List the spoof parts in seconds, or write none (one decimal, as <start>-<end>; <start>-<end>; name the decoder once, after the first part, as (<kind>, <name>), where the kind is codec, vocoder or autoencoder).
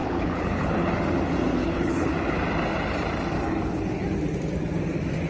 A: 0.0-0.9 (codec, HILCodec); 1.6-2.1